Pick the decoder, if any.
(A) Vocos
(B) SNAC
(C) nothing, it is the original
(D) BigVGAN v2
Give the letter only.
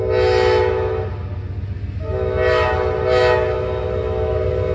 C